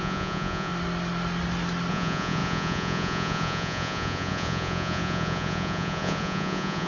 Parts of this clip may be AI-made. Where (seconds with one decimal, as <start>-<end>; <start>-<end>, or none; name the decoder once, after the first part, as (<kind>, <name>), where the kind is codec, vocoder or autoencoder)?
0.0-0.7 (vocoder, Vocos); 1.9-6.9